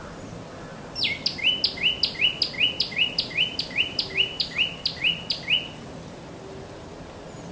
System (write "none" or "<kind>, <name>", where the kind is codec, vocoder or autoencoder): none